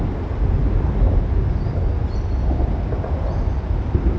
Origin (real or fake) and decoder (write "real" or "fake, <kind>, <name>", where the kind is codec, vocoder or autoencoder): real